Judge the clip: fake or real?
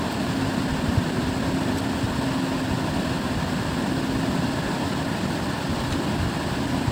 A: real